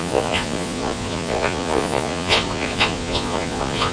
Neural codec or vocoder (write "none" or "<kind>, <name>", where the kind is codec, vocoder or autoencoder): vocoder, Vocos